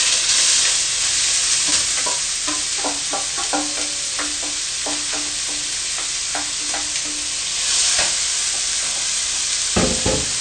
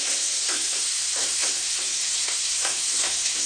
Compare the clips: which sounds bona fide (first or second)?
first